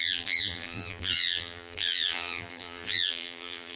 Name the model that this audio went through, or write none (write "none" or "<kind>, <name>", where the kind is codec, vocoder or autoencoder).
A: vocoder, BigVGAN v2